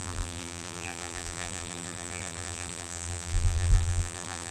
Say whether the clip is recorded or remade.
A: remade